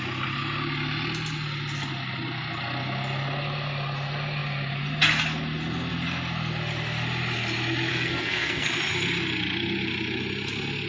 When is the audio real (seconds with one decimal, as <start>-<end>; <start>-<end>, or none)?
0.0-7.9; 8.7-10.9